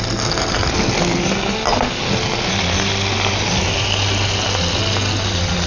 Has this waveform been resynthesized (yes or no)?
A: no